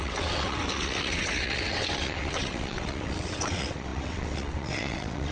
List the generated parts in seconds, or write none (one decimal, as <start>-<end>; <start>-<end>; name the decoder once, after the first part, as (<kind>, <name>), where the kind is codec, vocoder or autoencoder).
0.0-5.3 (vocoder, WaveNeXt)